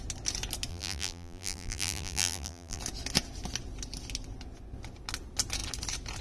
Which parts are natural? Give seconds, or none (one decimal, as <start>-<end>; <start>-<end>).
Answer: 0.0-0.7; 2.8-6.2